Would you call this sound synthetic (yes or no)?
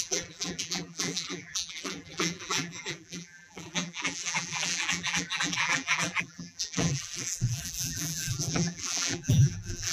yes